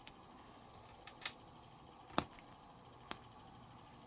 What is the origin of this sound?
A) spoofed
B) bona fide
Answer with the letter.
B